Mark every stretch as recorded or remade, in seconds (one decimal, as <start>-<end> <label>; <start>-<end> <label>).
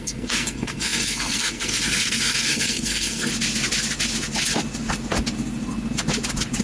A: 0.0-3.3 remade; 3.3-6.6 recorded